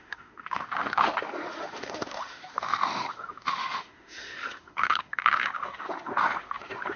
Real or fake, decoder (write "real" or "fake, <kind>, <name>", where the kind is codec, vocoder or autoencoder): fake, autoencoder, DAC-VAE